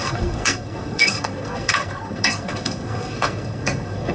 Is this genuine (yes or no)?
no